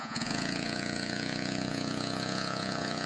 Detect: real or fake fake